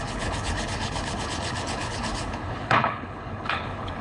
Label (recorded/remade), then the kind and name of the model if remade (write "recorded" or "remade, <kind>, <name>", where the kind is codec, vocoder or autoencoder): remade, codec, HILCodec